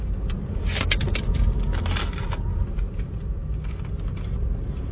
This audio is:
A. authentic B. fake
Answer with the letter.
A